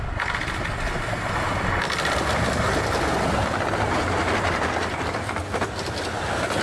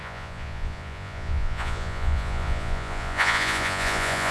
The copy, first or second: second